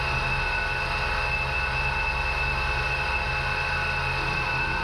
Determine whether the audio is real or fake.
real